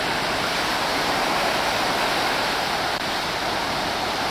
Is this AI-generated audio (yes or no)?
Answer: yes